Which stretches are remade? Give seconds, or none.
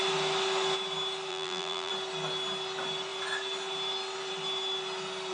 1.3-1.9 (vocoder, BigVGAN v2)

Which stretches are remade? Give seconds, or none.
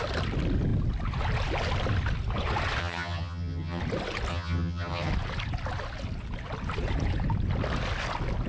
2.8-3.8 (vocoder, HiFi-GAN); 4.3-5.1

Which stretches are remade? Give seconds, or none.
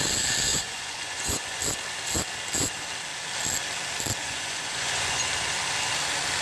0.5-1.6 (vocoder, Vocos); 4.2-5.3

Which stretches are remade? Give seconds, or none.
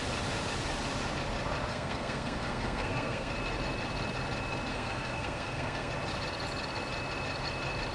1.7-3.3 (codec, SNAC); 4.7-5.9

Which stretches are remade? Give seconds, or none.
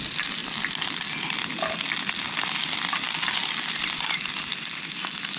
none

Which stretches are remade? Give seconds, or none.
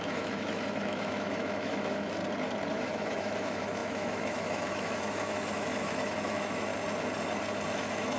0.0-2.2 (autoencoder, DAC-VAE); 2.7-6.7; 7.7-8.2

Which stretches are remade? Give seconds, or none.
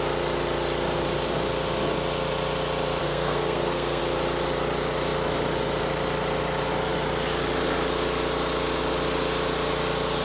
3.0-4.0 (codec, SNAC)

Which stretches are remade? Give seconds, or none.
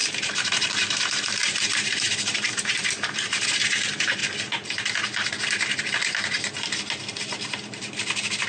0.0-4.2 (vocoder, BigVGAN v2); 7.2-8.5